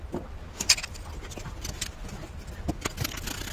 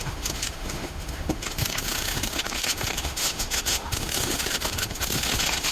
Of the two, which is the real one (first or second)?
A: first